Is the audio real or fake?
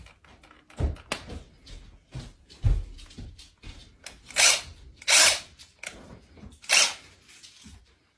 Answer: real